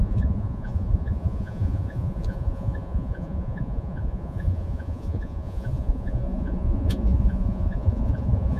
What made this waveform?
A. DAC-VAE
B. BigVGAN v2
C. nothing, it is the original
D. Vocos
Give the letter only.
D